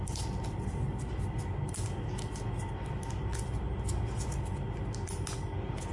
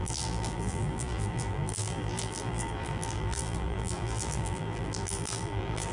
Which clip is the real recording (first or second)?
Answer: first